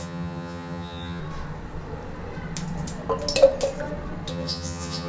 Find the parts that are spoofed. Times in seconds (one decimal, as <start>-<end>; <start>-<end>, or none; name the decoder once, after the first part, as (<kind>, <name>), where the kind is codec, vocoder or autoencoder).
0.0-1.2 (vocoder, HiFi-GAN); 4.3-5.1